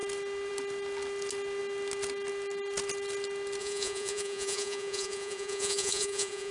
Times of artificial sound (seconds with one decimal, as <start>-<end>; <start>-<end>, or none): 3.6-6.5